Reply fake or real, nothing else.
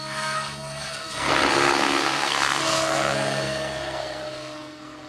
fake